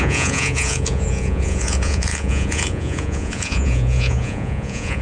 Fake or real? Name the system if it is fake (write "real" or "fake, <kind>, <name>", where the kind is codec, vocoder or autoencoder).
fake, vocoder, Vocos